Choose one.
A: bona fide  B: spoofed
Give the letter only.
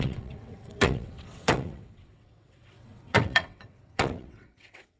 B